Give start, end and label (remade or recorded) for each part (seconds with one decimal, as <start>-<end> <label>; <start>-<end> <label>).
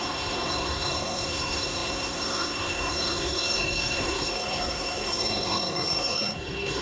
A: 0.0-6.8 remade